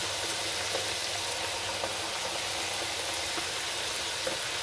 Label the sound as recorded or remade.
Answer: recorded